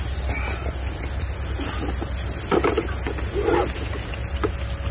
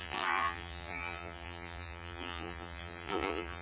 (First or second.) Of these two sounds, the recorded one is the first